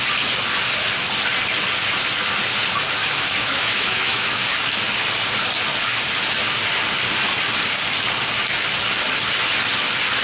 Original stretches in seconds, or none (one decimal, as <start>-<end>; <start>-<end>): 0.0-3.0; 4.3-10.2